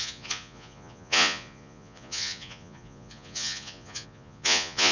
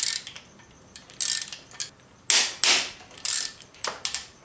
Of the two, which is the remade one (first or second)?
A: first